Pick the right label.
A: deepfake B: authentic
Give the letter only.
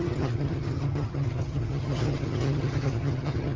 A